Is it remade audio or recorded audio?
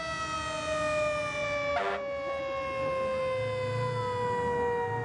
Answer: recorded